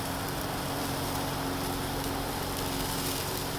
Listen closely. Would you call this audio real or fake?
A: real